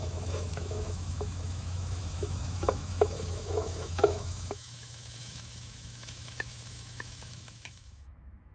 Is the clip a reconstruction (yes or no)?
yes